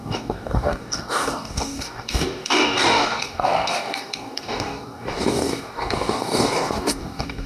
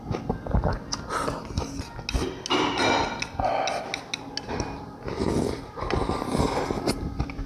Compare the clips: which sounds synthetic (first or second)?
first